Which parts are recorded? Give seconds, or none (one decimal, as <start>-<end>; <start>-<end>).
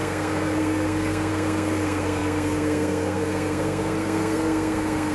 none